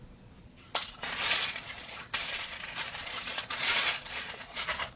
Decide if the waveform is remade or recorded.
remade